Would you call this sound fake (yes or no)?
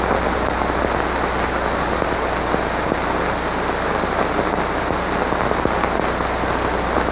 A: no